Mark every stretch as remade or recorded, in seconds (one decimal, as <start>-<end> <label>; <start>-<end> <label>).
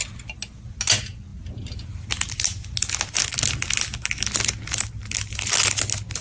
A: 0.0-6.2 recorded